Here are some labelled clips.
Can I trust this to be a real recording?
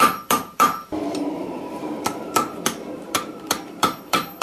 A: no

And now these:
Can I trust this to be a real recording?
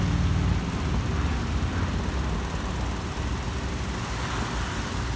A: yes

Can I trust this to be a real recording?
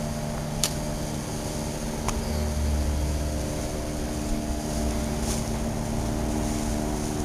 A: yes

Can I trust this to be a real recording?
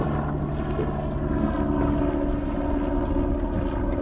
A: yes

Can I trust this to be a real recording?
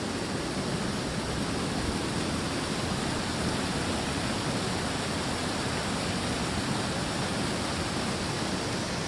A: yes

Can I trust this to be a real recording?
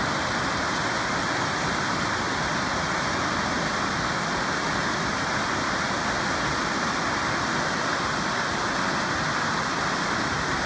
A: yes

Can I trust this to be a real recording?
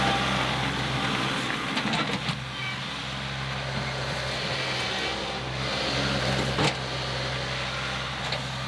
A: yes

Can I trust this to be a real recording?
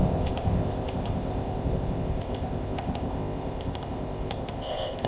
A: no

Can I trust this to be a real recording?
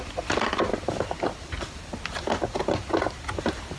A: yes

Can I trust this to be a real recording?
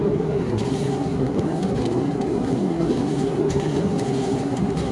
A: no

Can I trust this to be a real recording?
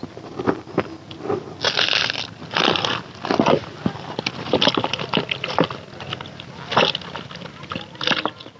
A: yes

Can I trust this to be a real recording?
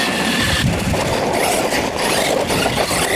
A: yes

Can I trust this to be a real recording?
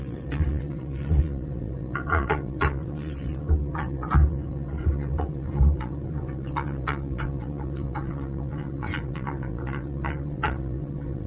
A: no